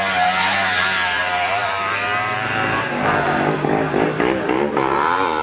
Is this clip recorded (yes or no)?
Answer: no